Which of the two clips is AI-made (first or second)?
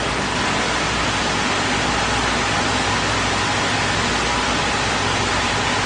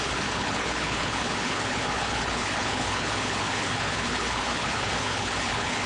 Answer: second